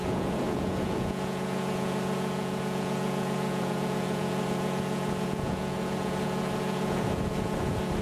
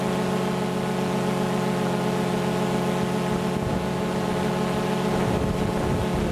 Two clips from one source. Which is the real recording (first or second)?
second